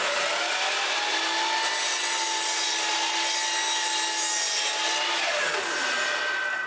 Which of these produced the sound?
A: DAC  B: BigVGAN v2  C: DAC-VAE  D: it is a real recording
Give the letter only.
D